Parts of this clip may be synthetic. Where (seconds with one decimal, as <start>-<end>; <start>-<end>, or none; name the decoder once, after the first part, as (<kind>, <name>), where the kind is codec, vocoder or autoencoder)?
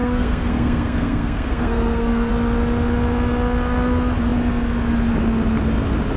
0.0-2.3 (codec, SNAC)